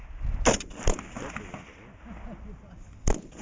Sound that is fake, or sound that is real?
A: real